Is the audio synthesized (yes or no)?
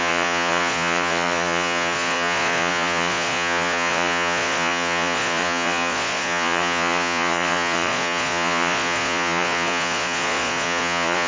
yes